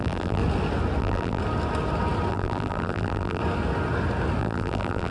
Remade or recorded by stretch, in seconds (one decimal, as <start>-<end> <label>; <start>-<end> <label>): 0.0-0.4 remade; 0.4-1.0 recorded; 1.0-1.4 remade; 1.4-2.3 recorded; 2.3-3.4 remade; 3.4-4.4 recorded; 4.4-5.1 remade